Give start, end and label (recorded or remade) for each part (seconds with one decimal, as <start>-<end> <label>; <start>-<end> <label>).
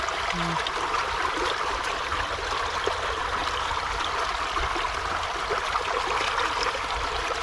0.0-7.4 recorded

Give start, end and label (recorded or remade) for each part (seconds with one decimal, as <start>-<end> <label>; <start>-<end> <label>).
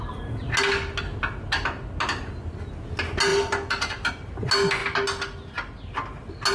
0.0-3.3 recorded; 3.3-4.1 remade; 4.1-6.5 recorded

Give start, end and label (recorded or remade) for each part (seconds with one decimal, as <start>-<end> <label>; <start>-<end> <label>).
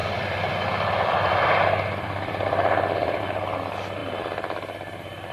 0.0-3.2 remade; 3.2-5.3 recorded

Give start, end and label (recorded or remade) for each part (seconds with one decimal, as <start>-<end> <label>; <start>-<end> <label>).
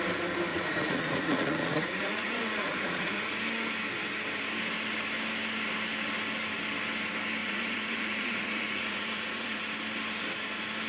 0.0-0.5 recorded; 0.5-3.4 remade; 3.4-7.4 recorded; 7.4-9.6 remade; 9.6-10.9 recorded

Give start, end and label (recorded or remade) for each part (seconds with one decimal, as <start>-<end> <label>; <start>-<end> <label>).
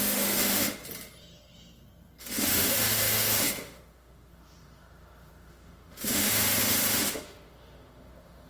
0.0-0.8 remade; 0.8-2.2 recorded; 2.2-8.5 remade